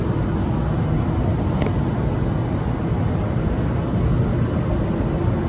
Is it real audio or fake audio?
real